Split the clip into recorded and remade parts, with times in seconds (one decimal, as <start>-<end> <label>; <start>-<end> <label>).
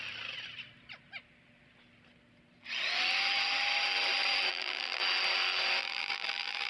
0.0-4.5 recorded; 4.5-5.0 remade; 5.0-5.8 recorded; 5.8-6.7 remade